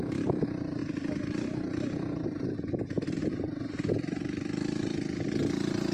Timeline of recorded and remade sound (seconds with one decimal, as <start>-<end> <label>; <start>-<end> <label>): 0.0-5.9 recorded